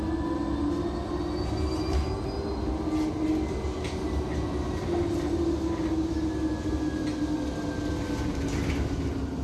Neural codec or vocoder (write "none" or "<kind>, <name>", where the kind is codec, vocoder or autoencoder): none